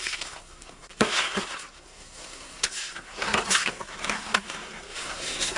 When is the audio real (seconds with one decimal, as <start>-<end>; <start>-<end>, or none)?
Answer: none